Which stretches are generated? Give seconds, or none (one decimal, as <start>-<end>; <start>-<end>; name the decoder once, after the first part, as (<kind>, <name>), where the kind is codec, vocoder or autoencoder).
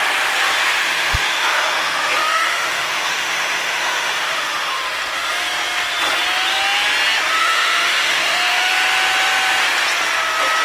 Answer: 0.8-4.8 (autoencoder, DAC-VAE); 7.4-8.7